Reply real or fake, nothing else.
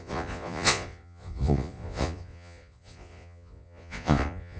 fake